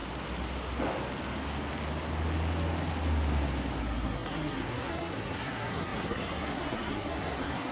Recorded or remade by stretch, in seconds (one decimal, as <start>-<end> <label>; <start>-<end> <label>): 0.0-3.8 recorded; 3.8-7.7 remade